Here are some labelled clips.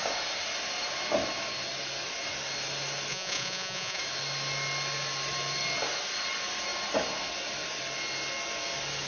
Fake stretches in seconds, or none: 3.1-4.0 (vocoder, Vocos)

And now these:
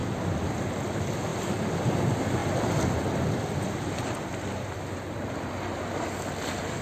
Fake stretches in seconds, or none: none